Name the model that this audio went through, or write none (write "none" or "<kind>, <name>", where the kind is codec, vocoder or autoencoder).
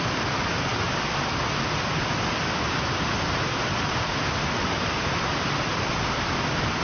none